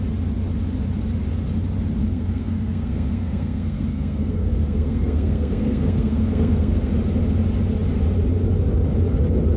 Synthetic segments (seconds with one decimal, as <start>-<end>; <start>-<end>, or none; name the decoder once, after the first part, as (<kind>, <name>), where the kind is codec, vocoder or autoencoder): 2.0-6.9 (codec, SNAC)